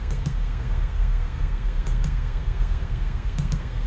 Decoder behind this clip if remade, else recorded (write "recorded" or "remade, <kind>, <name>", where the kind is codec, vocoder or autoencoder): remade, codec, SNAC